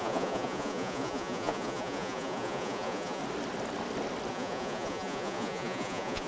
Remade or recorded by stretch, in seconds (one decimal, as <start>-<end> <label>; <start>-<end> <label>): 0.0-3.2 remade; 3.2-4.3 recorded; 4.3-6.3 remade